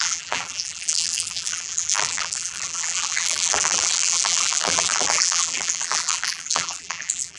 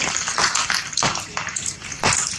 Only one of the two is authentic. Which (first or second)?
second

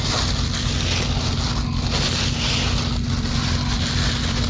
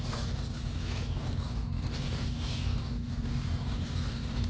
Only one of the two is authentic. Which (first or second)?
first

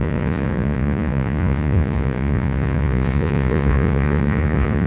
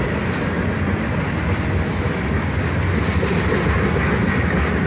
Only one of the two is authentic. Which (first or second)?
second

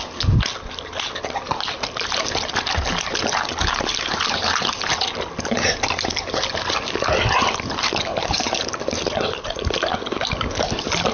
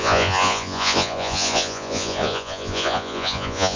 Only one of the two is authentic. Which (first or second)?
first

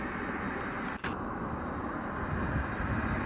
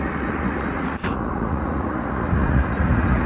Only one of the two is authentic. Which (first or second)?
first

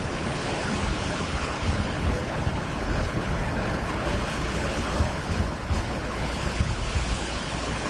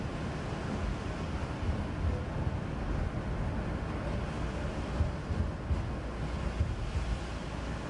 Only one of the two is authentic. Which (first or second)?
second